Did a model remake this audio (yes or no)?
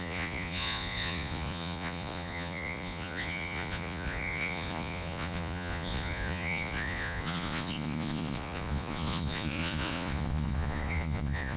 yes